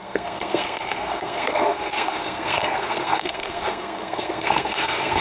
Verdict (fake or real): fake